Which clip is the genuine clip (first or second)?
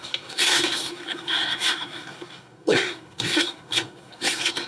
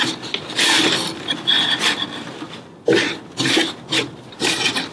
second